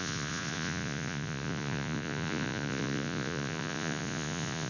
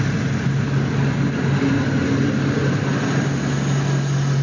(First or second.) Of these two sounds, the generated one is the first